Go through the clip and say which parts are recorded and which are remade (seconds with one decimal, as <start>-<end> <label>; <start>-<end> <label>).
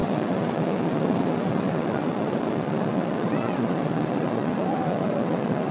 0.0-5.7 remade